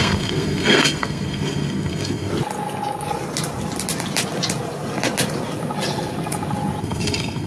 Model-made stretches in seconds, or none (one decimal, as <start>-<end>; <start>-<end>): 0.0-2.3; 6.8-7.5